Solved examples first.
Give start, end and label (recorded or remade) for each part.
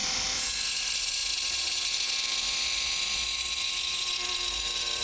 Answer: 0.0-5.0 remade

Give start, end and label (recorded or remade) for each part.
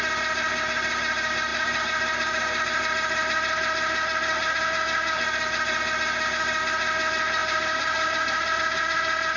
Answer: 0.0-1.5 recorded; 1.5-2.8 remade; 2.8-7.4 recorded; 7.4-8.6 remade; 8.6-9.4 recorded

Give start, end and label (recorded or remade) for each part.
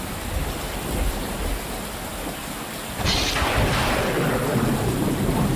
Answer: 0.0-0.4 recorded; 0.4-1.5 remade; 1.5-4.5 recorded; 4.5-5.6 remade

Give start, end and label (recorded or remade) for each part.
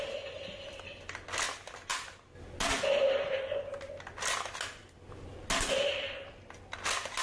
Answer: 0.0-7.2 recorded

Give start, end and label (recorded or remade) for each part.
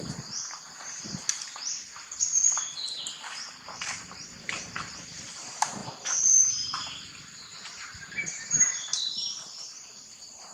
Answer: 0.0-2.3 remade; 2.3-3.8 recorded; 3.8-5.8 remade; 5.8-6.5 recorded; 6.5-10.5 remade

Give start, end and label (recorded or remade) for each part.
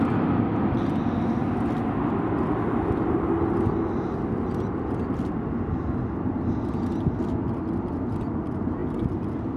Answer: 0.0-9.6 recorded